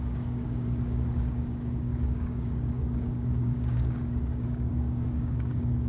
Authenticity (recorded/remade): remade